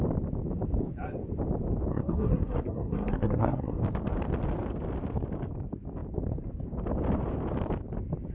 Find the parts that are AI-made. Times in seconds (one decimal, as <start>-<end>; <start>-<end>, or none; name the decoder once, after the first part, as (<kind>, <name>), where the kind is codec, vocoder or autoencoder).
1.9-3.8 (codec, SNAC)